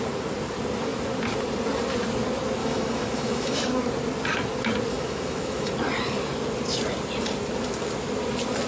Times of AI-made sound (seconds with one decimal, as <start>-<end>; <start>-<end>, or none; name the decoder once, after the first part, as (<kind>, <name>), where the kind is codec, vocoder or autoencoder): 2.6-3.6 (autoencoder, DAC-VAE); 4.9-5.7